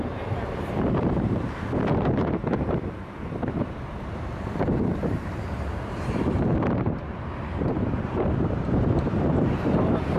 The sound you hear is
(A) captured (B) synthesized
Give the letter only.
B